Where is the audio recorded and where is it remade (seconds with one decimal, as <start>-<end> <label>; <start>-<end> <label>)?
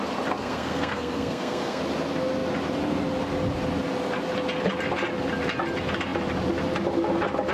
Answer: 0.0-0.4 recorded; 0.4-1.8 remade; 1.8-7.5 recorded